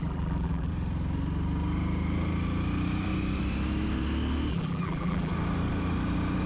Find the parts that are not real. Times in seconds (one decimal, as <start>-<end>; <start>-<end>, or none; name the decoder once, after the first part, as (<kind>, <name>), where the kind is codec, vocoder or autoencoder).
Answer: 0.0-0.7 (vocoder, BigVGAN v2); 4.5-5.3